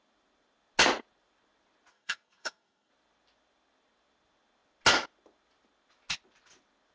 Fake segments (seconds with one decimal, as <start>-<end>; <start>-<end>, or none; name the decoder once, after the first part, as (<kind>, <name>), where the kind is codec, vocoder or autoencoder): 1.9-2.9 (codec, SNAC)